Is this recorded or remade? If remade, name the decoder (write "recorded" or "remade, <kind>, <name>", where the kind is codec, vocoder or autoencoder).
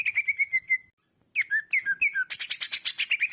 recorded